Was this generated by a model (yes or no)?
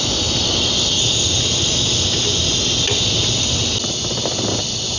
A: no